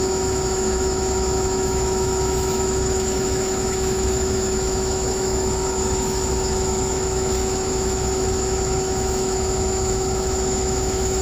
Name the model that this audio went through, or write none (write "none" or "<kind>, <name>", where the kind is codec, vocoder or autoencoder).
autoencoder, DAC-VAE